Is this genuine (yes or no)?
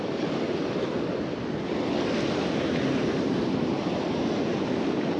yes